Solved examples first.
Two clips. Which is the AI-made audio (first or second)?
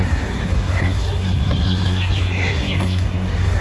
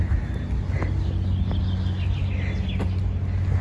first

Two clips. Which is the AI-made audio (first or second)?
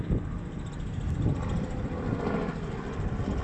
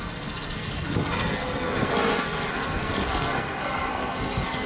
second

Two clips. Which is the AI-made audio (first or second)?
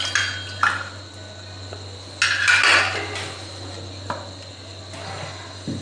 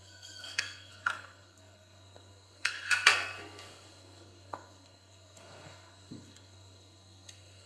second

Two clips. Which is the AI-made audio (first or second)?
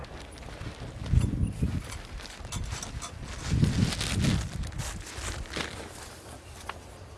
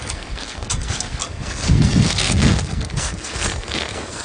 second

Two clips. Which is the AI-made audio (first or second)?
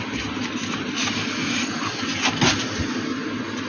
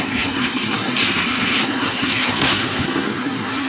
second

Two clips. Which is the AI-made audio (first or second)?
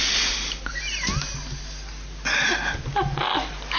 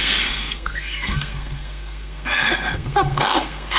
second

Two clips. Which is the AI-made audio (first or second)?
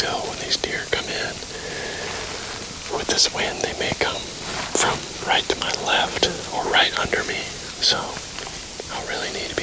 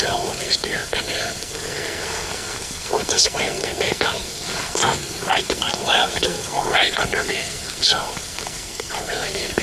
second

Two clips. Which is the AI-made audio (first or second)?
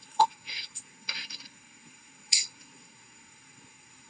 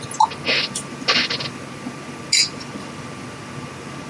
first